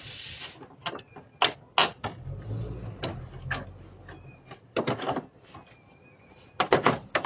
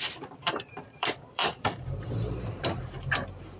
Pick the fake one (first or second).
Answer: second